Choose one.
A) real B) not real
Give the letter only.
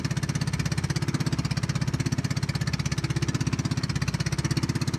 A